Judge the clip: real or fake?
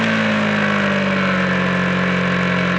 real